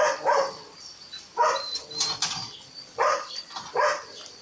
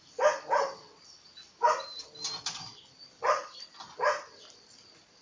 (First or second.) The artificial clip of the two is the first